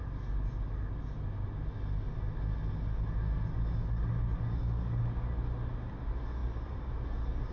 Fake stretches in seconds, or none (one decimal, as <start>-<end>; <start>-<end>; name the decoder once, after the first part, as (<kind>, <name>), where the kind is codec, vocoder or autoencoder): none